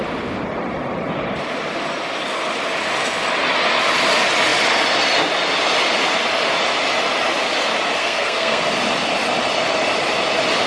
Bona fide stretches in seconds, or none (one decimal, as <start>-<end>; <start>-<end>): 0.0-8.0; 8.6-10.7